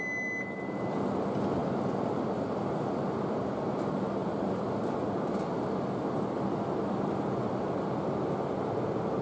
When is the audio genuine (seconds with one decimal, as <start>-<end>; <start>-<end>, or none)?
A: 0.0-4.2; 4.7-9.2